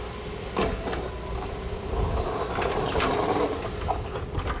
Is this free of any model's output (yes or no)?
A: yes